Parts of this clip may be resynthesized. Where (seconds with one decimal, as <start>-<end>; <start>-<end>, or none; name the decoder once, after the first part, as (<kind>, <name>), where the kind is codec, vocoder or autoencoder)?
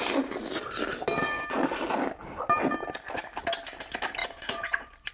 4.2-5.1 (vocoder, Vocos)